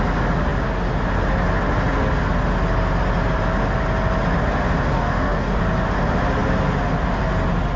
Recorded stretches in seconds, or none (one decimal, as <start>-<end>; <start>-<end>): 0.0-4.9; 5.6-7.8